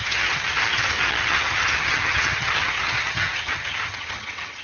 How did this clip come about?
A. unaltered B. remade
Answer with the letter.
B